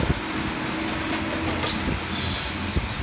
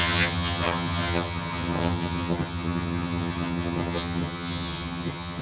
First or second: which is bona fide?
first